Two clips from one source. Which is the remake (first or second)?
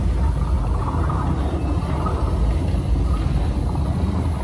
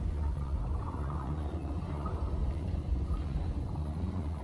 second